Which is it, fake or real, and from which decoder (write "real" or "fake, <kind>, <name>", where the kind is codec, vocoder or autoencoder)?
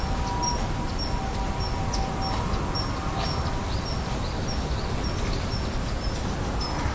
real